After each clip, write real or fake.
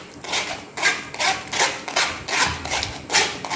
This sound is real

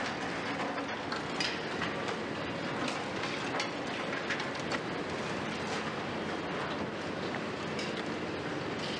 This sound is real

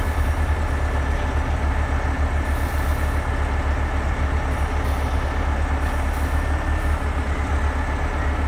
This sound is real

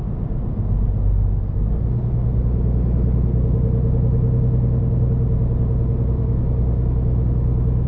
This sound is real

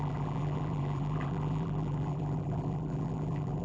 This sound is fake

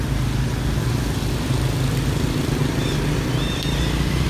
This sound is real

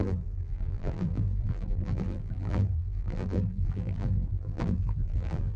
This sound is fake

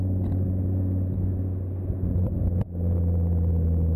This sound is real